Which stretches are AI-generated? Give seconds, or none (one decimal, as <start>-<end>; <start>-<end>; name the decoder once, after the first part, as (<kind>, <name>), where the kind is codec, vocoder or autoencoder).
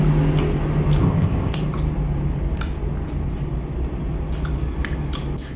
1.0-1.5 (codec, ZipCodec)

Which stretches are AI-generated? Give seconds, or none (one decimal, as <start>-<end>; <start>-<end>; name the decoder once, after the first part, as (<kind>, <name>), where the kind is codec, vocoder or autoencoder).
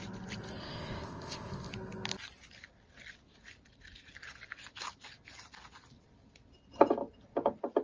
0.6-1.7 (codec, ZipCodec)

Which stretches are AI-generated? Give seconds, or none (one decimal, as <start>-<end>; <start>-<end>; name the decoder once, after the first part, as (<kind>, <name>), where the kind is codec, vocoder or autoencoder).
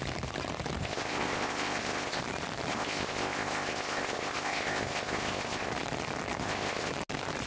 0.8-2.2 (codec, ZipCodec); 2.7-5.7; 6.4-6.9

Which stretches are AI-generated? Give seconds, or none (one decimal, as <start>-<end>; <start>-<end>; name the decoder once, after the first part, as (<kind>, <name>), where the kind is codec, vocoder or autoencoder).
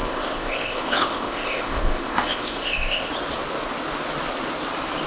0.0-3.1 (codec, ZipCodec)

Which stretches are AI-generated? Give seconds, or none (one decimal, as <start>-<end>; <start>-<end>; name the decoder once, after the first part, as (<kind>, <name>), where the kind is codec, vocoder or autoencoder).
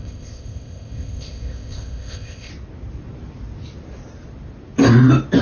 0.0-2.5 (codec, ZipCodec)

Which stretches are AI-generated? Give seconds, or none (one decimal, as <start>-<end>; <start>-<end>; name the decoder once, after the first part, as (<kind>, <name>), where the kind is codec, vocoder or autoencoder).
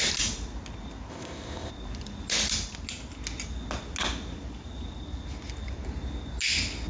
1.1-1.7 (codec, ZipCodec)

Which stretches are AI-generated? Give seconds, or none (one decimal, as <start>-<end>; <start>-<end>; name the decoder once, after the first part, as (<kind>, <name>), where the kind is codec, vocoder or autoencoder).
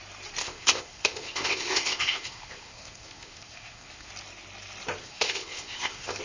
0.4-4.1 (codec, ZipCodec); 5.0-6.2